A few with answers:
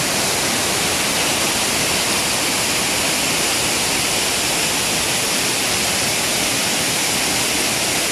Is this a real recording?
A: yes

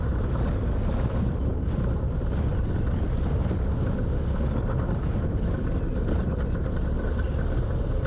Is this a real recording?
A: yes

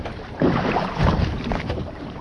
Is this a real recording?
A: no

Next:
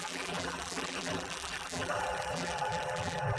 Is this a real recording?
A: no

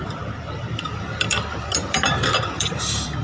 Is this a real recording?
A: no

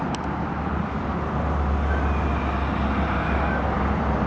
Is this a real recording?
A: yes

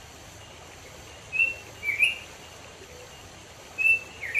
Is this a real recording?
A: yes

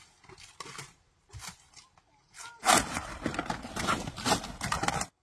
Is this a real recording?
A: yes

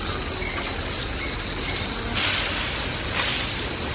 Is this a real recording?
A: yes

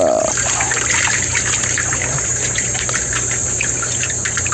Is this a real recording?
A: yes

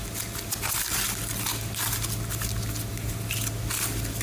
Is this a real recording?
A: yes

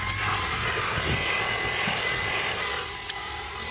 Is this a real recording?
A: yes